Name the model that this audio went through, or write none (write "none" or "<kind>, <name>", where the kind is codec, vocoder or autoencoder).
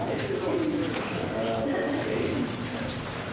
none